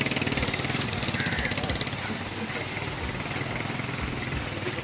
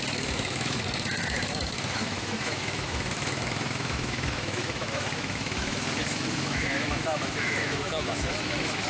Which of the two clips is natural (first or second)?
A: first